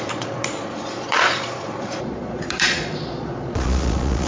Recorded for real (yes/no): no